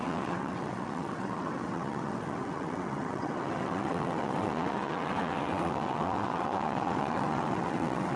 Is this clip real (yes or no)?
no